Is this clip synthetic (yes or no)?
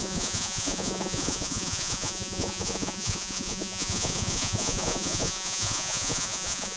yes